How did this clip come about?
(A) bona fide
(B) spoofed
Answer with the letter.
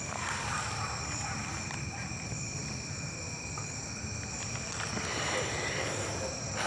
A